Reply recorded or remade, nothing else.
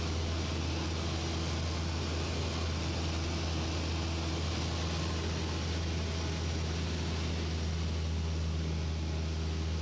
recorded